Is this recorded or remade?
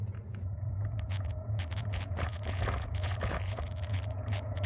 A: remade